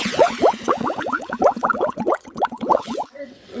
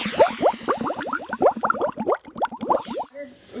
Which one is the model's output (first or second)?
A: first